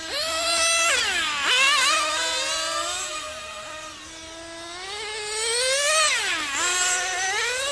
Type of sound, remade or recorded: recorded